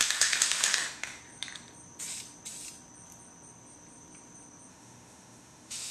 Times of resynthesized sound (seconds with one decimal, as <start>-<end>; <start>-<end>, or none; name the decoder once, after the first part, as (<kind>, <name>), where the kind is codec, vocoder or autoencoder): 0.0-1.2 (autoencoder, DAC-VAE); 4.7-5.9